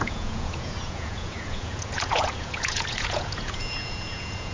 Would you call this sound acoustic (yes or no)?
no